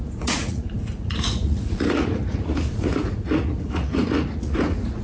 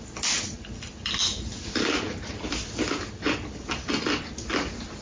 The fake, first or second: first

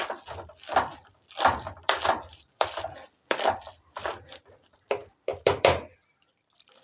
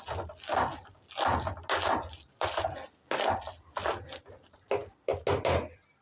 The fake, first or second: first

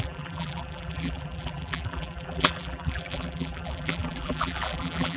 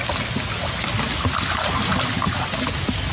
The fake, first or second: first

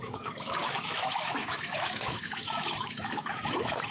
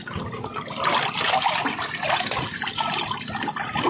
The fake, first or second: first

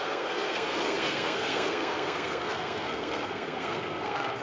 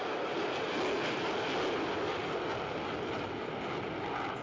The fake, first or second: first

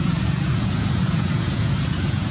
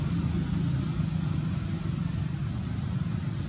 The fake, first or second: first